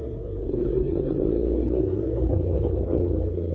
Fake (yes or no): yes